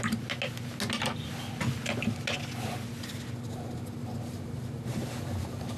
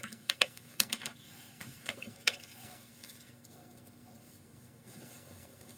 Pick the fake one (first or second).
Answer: second